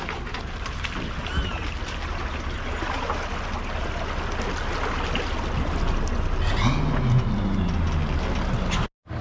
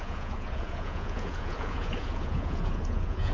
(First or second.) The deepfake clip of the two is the second